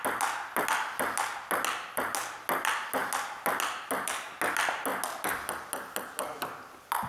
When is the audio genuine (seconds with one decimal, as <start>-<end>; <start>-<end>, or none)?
0.0-7.1